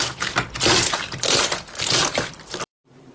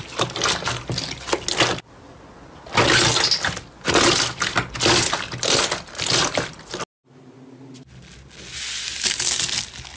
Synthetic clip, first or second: first